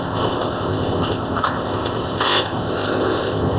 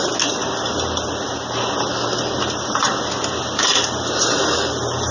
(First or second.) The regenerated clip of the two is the first